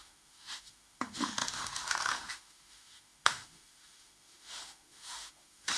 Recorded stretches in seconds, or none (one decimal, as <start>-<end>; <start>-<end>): none